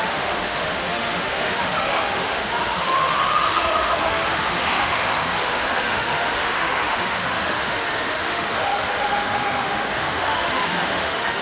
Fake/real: fake